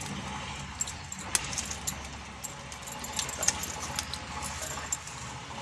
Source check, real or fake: real